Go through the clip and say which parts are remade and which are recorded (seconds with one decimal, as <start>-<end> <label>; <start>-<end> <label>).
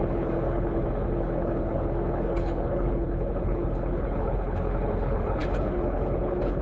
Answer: 0.0-6.6 remade